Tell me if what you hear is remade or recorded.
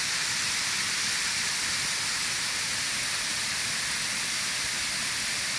recorded